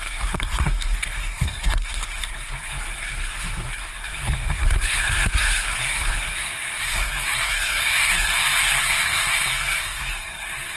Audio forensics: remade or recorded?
remade